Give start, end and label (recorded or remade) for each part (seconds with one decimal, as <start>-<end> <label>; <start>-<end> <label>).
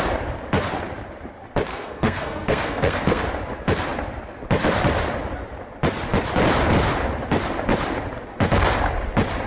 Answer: 0.0-1.7 recorded; 1.7-3.2 remade; 3.2-9.5 recorded